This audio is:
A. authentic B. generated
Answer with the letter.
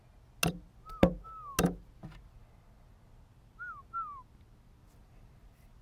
A